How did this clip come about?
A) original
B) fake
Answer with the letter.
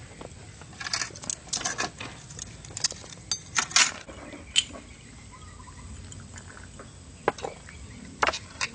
A